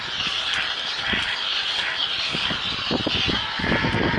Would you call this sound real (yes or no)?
yes